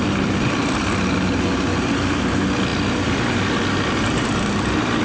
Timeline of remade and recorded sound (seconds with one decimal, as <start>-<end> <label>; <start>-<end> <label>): 0.0-0.9 remade; 0.9-2.7 recorded; 2.7-5.0 remade